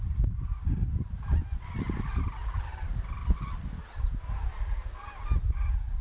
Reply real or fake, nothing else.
real